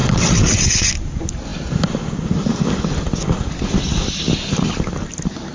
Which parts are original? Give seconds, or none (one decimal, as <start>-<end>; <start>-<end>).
0.9-5.5